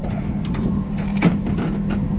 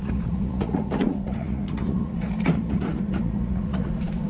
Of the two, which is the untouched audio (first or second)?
first